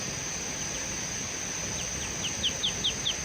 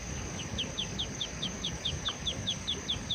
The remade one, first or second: second